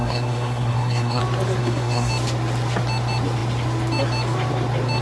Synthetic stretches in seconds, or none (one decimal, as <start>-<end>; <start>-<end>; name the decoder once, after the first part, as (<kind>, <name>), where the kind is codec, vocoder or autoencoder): 0.0-1.2 (codec, SNAC); 1.6-2.1